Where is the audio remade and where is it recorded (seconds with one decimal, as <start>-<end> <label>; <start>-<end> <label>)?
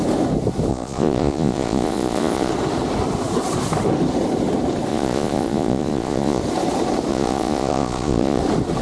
0.0-0.7 recorded; 0.7-2.5 remade; 2.5-4.9 recorded; 4.9-6.4 remade; 6.4-7.1 recorded; 7.1-8.4 remade; 8.4-8.8 recorded